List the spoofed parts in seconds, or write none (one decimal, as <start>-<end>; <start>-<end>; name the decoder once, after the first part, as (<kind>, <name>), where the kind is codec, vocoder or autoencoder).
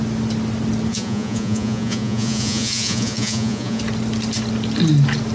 0.9-3.8 (vocoder, Vocos)